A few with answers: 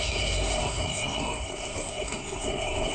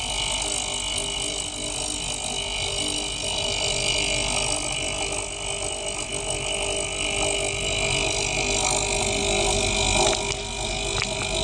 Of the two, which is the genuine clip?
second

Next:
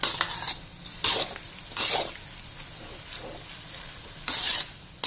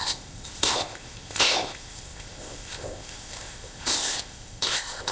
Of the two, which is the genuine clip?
first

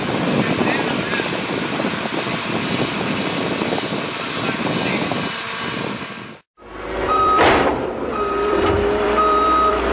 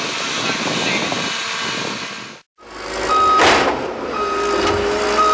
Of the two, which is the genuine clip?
second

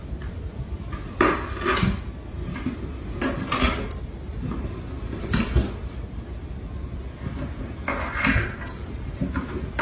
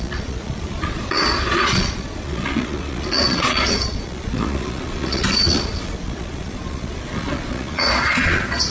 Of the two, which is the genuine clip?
first